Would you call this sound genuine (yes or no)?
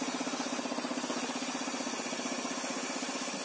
yes